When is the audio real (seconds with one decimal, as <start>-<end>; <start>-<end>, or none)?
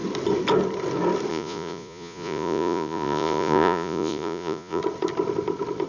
0.0-1.3; 4.8-5.9